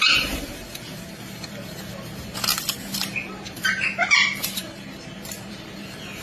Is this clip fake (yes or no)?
yes